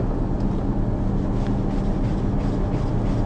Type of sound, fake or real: real